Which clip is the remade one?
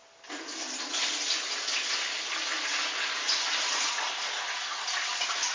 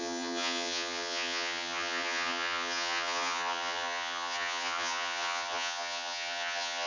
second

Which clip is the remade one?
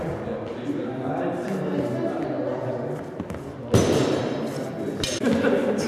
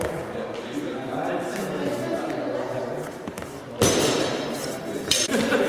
second